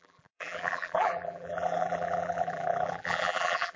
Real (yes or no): no